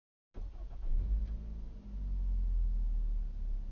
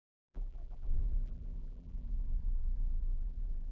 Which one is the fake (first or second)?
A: second